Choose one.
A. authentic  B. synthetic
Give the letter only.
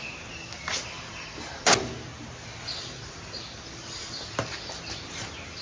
A